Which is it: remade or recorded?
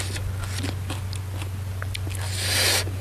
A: recorded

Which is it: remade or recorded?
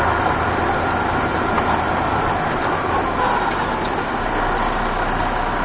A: recorded